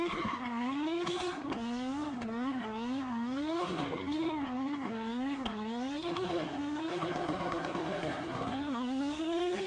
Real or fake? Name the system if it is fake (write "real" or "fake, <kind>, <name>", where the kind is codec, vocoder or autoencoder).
fake, codec, SNAC